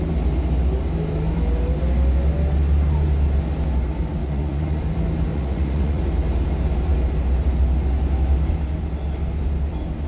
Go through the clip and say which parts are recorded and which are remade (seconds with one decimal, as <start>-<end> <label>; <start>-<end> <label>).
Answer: 0.0-4.2 recorded; 4.2-4.8 remade; 4.8-5.3 recorded; 5.3-6.0 remade; 6.0-10.1 recorded